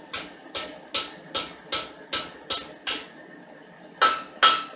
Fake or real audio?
real